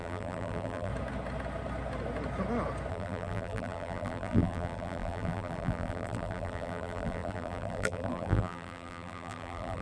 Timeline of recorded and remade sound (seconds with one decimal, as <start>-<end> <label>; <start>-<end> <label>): 0.0-0.9 remade; 0.9-2.9 recorded; 2.9-9.8 remade